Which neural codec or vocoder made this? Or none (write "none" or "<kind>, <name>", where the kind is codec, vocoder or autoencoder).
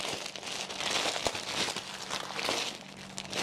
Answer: none